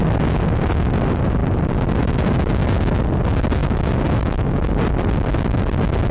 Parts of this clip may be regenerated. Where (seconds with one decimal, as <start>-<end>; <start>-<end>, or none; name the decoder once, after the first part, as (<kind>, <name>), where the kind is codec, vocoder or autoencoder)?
3.6-4.7 (autoencoder, DAC-VAE)